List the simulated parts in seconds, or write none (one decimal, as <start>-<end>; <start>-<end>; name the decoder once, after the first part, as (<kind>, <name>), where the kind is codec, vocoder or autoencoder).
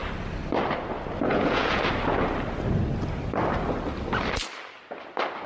1.3-1.8 (vocoder, Vocos)